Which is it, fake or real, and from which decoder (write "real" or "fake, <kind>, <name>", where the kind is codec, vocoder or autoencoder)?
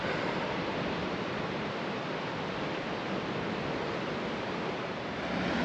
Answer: real